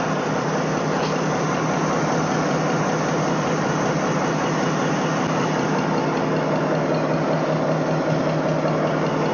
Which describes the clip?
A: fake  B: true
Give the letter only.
B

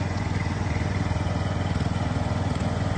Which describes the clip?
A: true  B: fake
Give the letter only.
B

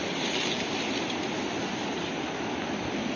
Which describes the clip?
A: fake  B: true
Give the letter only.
B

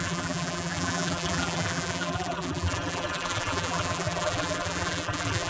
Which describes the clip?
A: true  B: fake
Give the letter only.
B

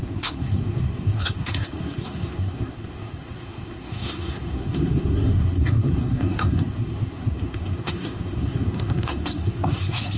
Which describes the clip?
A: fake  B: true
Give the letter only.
A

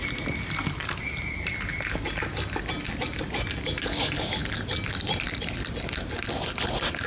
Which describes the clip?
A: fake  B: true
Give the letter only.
B